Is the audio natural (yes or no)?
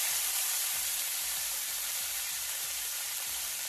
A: no